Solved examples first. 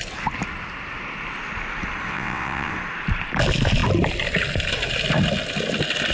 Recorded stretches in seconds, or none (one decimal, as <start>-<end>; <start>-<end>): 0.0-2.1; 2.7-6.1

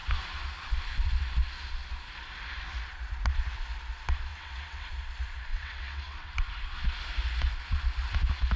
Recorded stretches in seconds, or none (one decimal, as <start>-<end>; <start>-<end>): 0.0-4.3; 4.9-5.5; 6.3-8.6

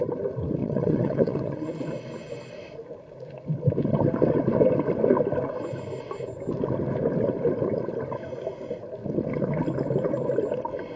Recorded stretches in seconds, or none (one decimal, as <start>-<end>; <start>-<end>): 0.0-0.6; 1.9-11.0

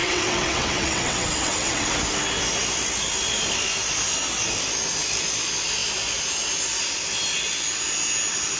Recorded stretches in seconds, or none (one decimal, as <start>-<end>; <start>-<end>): 1.9-8.6

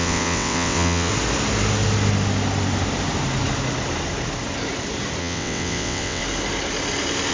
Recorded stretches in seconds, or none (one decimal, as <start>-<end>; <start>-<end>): 1.1-5.2; 6.2-7.3

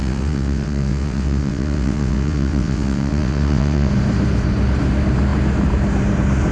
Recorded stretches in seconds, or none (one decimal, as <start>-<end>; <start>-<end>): 3.9-6.5

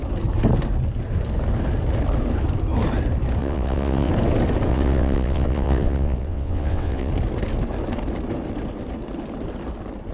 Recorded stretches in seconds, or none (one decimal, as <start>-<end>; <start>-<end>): 0.0-3.4; 4.1-4.7; 7.1-10.1

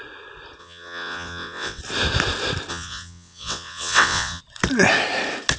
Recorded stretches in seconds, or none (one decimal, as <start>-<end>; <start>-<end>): 0.0-0.6; 1.8-2.7; 4.4-5.6